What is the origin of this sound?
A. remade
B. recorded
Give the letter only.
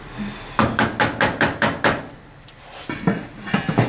B